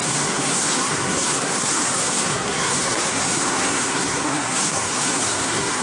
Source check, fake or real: fake